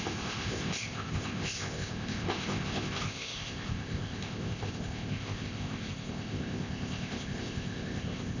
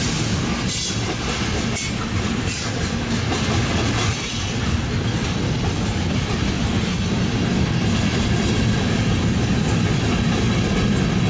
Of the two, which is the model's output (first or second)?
first